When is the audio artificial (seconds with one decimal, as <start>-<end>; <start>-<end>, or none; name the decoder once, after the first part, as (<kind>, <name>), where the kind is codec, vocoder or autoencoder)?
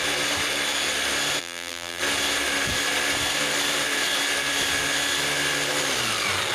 1.4-2.0 (vocoder, BigVGAN v2)